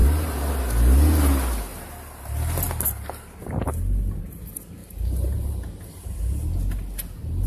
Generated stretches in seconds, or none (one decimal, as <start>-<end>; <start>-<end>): 0.0-0.6; 4.8-5.6